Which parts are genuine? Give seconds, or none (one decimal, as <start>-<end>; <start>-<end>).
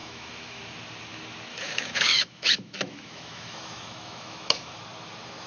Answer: 0.6-1.5; 4.8-5.5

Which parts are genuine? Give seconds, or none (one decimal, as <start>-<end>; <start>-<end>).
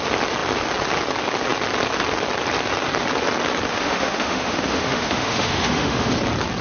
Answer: 0.0-3.7; 6.1-6.6